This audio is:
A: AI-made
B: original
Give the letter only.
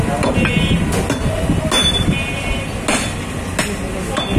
B